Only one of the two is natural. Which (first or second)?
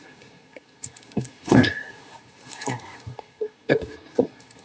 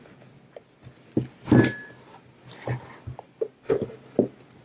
second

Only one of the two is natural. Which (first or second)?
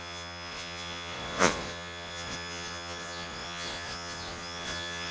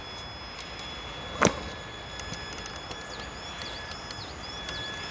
second